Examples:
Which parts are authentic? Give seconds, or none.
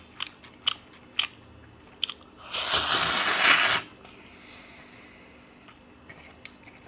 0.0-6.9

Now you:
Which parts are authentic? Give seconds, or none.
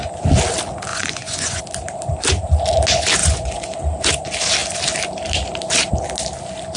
0.0-0.9; 1.6-3.2; 3.7-6.8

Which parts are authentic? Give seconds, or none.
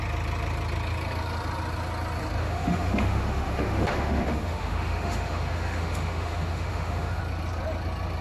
0.0-2.4; 7.2-8.2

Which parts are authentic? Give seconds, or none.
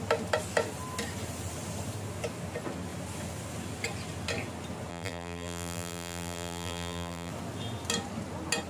0.0-4.9; 7.3-8.7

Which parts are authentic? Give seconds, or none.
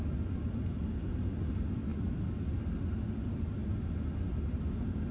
0.0-5.1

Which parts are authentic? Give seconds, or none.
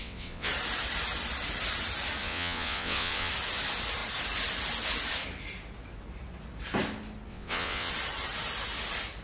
0.5-2.2; 3.3-7.3; 7.9-9.2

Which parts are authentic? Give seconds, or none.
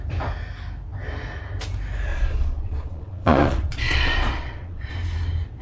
0.0-2.1; 4.9-5.6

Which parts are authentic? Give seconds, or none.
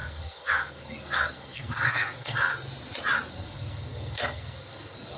2.5-3.3